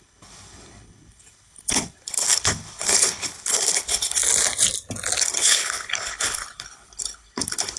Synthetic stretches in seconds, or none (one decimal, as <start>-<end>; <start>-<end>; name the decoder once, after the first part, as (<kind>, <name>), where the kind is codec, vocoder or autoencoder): 0.0-4.2 (codec, HILCodec); 5.2-7.8